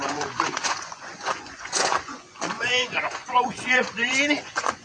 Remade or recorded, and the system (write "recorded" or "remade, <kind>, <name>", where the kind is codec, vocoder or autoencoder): remade, vocoder, Vocos